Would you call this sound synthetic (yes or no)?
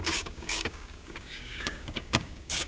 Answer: yes